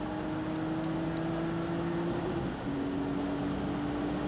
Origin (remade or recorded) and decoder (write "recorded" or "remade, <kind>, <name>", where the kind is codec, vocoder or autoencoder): recorded